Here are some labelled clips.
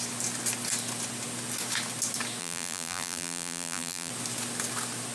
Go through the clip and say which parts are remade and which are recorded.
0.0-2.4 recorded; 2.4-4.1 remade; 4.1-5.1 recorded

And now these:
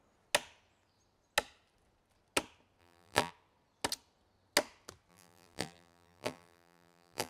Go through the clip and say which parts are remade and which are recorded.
0.0-2.8 recorded; 2.8-3.3 remade; 3.3-5.1 recorded; 5.1-7.3 remade

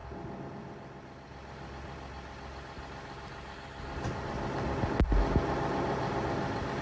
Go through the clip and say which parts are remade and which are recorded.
0.0-6.8 recorded

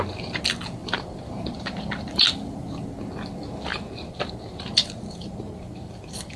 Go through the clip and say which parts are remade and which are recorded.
0.0-0.8 recorded; 0.8-2.8 remade; 2.8-3.7 recorded; 3.7-6.4 remade

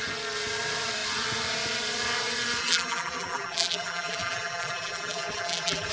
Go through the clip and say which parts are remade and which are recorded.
0.0-2.6 recorded; 2.6-5.9 remade